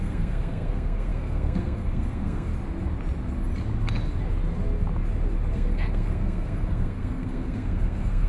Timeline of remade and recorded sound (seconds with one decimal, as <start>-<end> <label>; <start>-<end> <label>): 0.0-2.5 remade; 2.5-5.5 recorded; 5.5-8.3 remade

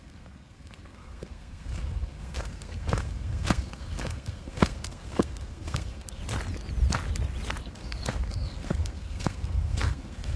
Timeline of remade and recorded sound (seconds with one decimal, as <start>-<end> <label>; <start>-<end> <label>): 0.0-6.2 remade; 6.2-7.6 recorded; 7.6-10.4 remade

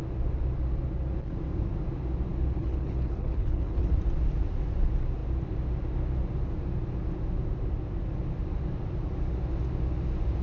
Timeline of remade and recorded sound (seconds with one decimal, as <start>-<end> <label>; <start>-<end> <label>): 0.0-2.6 recorded; 2.6-3.9 remade; 3.9-10.4 recorded

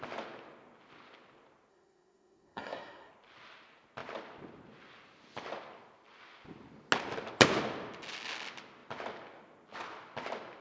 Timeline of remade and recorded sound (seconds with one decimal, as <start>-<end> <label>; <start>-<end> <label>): 0.0-1.7 recorded; 1.7-3.1 remade; 3.1-10.6 recorded

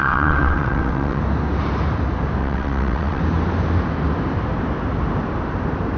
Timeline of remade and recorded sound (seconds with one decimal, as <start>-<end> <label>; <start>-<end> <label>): 0.0-1.2 remade; 1.2-2.4 recorded; 2.4-3.2 remade; 3.2-6.0 recorded

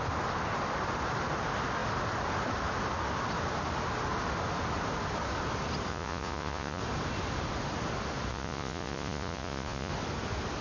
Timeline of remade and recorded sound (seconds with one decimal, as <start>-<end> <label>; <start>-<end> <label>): 0.0-5.9 recorded; 5.9-6.8 remade; 6.8-8.3 recorded; 8.3-9.9 remade; 9.9-10.6 recorded

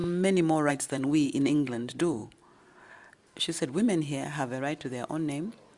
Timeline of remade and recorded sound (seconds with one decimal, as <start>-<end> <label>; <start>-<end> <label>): 0.0-0.7 recorded; 0.7-2.2 remade; 2.2-5.8 recorded

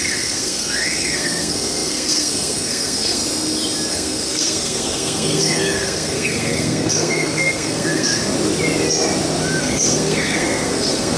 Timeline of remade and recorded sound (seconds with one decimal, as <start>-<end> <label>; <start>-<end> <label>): 0.0-3.2 remade; 3.2-3.9 recorded; 3.9-8.2 remade; 8.2-9.6 recorded; 9.6-11.2 remade